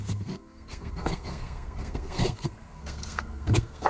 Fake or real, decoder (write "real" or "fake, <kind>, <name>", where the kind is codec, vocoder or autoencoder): fake, codec, SNAC